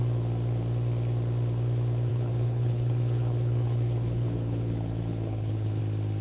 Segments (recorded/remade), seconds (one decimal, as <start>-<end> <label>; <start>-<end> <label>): 0.0-2.1 recorded; 2.1-5.8 remade; 5.8-6.2 recorded